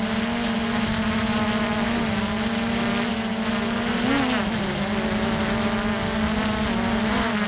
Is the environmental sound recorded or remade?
recorded